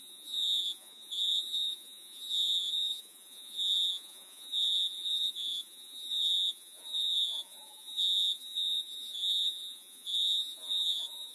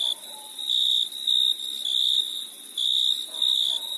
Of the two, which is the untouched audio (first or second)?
second